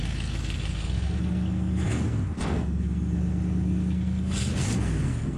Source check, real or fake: fake